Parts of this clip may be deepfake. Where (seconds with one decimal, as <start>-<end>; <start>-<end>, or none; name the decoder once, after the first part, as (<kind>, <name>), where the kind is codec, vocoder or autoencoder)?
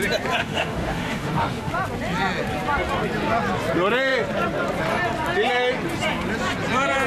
0.4-1.7 (autoencoder, DAC-VAE)